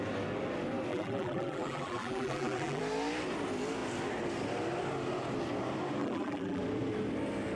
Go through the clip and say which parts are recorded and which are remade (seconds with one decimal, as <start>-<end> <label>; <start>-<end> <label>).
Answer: 0.0-0.9 recorded; 0.9-2.8 remade; 2.8-6.0 recorded; 6.0-6.6 remade; 6.6-7.6 recorded